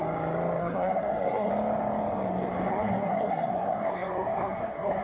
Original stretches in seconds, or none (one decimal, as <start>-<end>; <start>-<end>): 0.0-0.6; 1.5-2.7